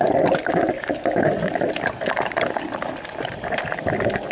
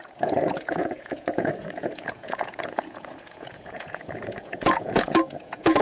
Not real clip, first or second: second